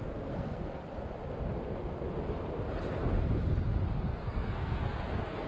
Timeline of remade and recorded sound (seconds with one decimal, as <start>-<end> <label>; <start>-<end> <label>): 0.0-0.8 remade; 0.8-4.1 recorded; 4.1-5.5 remade